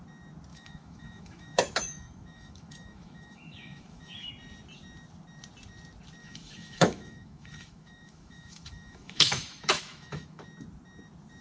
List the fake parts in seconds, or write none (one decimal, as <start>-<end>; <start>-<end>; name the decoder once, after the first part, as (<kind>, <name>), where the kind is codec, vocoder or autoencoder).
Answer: 0.5-4.3 (autoencoder, DAC-VAE); 6.2-10.4